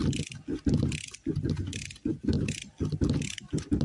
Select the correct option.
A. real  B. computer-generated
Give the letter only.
A